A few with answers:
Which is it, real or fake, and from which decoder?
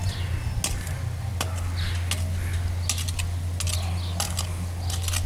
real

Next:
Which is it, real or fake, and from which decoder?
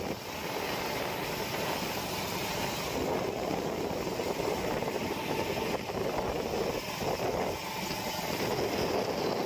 real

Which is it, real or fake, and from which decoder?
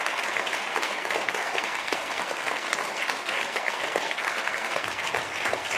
fake, codec, SNAC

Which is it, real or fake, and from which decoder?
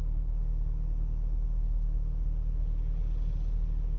real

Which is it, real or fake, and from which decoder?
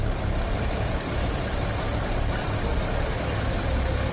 real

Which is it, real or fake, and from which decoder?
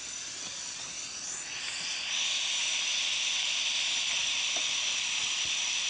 real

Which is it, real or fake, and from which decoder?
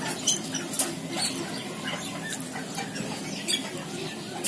real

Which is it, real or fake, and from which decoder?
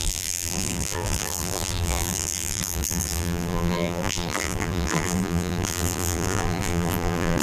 fake, vocoder, BigVGAN v2